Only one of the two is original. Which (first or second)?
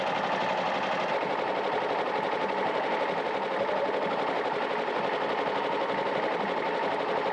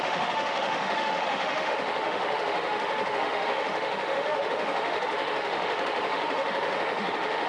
first